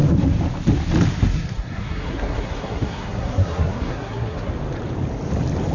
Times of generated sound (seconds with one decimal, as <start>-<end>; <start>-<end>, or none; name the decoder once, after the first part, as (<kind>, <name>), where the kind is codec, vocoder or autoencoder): 1.1-4.5 (codec, SNAC)

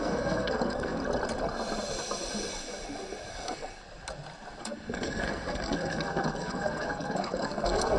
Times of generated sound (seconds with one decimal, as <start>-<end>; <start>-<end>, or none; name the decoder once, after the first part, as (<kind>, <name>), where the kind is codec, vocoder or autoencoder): 0.0-1.0 (codec, SNAC); 3.3-3.7; 4.6-8.0

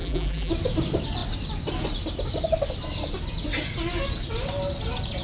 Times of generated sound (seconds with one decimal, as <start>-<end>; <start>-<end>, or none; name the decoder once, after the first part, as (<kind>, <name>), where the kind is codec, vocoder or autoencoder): 0.0-0.5 (vocoder, BigVGAN v2)

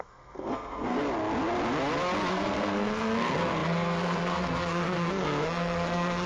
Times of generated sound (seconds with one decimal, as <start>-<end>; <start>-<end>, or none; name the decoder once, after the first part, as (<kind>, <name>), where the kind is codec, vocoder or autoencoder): 0.0-1.0 (codec, SNAC); 2.3-6.3

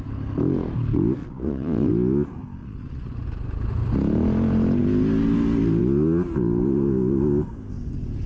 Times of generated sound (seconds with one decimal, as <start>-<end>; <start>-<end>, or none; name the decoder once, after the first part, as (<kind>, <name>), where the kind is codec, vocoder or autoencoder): 1.2-1.9 (vocoder, Vocos); 2.6-3.1

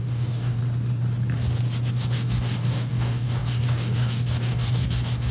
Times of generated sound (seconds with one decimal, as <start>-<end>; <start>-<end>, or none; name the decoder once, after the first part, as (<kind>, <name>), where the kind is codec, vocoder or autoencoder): 0.0-0.6 (codec, DAC); 1.9-5.3

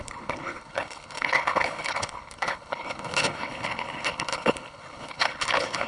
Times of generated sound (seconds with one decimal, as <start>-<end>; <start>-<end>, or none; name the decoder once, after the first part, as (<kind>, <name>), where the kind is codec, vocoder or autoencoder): 0.0-5.9 (codec, HILCodec)